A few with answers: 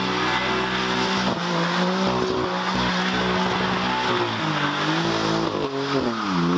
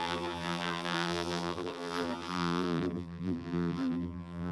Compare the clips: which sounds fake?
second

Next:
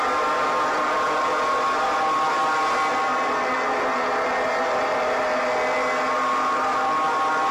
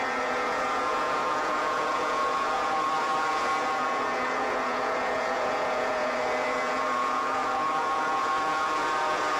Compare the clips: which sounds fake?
second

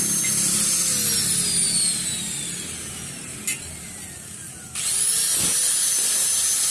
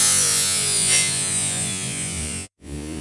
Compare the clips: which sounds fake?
second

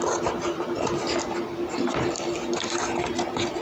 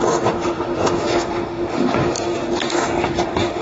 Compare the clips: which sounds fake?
second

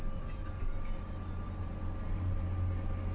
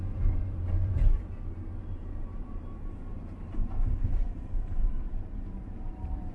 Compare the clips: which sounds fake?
second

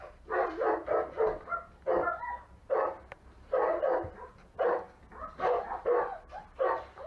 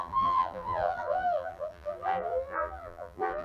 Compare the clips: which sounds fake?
second